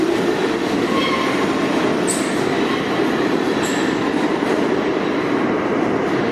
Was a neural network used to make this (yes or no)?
yes